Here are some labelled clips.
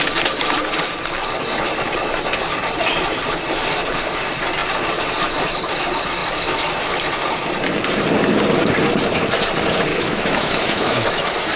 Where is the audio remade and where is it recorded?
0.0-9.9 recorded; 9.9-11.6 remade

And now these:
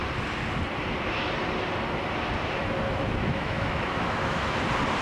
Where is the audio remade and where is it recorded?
0.0-3.2 recorded; 3.2-4.5 remade; 4.5-5.0 recorded

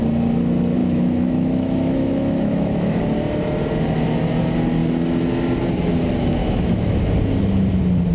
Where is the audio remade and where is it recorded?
0.0-0.8 recorded; 0.8-3.0 remade; 3.0-6.4 recorded; 6.4-7.0 remade; 7.0-8.1 recorded